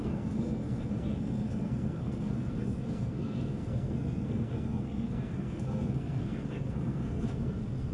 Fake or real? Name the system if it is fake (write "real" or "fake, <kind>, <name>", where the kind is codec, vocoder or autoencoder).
fake, codec, SNAC